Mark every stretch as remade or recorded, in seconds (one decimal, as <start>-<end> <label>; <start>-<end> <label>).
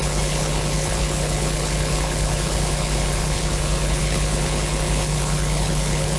0.0-6.2 remade